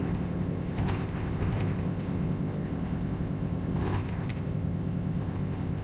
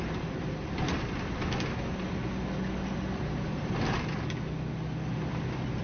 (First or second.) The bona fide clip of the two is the second